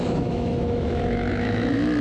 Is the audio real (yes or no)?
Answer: no